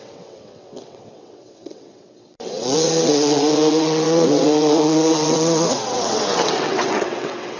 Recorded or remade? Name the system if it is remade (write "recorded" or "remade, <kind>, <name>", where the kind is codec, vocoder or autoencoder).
remade, vocoder, WaveNeXt